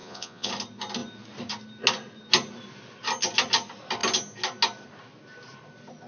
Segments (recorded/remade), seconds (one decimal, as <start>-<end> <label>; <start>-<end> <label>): 0.0-0.5 remade; 0.5-6.1 recorded